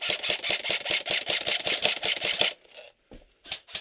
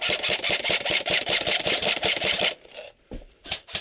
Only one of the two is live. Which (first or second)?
first